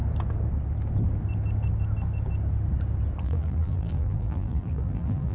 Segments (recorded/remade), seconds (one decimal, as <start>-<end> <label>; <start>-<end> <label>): 0.0-3.2 recorded; 3.2-5.3 remade